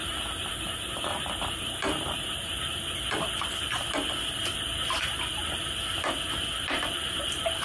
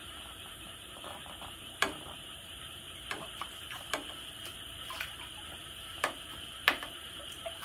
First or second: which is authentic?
first